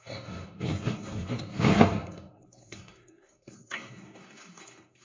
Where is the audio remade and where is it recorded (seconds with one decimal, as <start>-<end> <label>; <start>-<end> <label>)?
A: 0.0-5.0 remade